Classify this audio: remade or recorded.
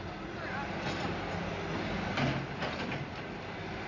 recorded